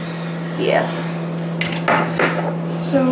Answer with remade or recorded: recorded